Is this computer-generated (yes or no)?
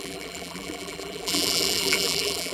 yes